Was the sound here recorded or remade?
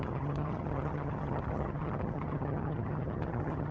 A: remade